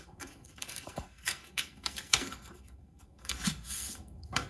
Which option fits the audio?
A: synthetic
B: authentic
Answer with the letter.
A